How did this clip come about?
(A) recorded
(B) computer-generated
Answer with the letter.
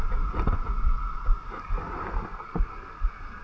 A